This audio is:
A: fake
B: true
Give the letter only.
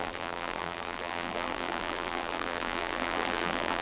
A